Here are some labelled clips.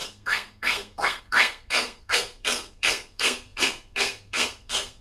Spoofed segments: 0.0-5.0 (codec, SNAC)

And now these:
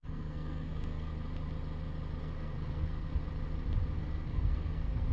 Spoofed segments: 0.0-1.1 (codec, SNAC); 2.2-3.1; 4.0-5.1

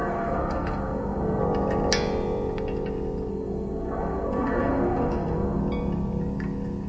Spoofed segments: 0.0-1.4 (codec, SNAC); 3.3-5.6

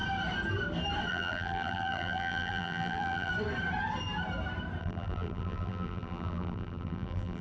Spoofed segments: 1.1-3.3 (vocoder, BigVGAN v2); 4.8-7.4

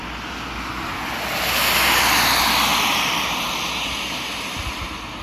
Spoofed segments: none

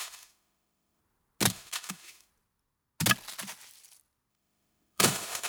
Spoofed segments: 0.0-1.0 (autoencoder, DAC-VAE); 1.5-2.3; 4.3-5.5